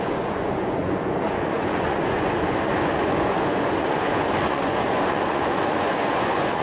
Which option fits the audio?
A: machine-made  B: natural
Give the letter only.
A